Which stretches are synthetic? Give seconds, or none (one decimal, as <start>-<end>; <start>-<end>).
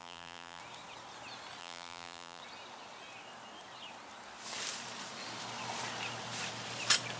0.0-0.6; 1.6-2.4